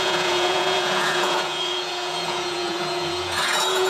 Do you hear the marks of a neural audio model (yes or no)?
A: yes